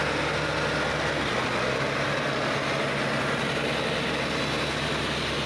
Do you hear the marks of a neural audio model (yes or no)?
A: no